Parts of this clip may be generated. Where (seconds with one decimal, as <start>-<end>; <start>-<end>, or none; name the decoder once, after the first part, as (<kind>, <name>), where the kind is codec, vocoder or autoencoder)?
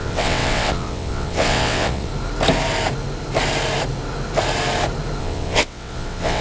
0.0-2.1 (vocoder, WaveNeXt); 5.2-6.4